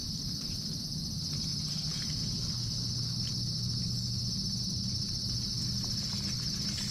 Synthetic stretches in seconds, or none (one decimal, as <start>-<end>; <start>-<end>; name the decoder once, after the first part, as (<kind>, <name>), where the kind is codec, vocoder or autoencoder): none